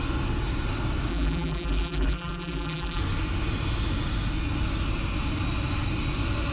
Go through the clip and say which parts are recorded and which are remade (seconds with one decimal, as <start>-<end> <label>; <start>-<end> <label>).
0.0-1.1 recorded; 1.1-3.0 remade; 3.0-6.5 recorded